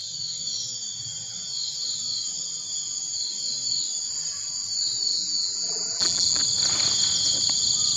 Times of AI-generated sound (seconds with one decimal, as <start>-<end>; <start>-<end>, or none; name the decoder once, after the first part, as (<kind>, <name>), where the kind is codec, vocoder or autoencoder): 5.1-6.4 (vocoder, BigVGAN v2)